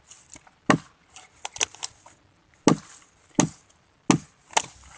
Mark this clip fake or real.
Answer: real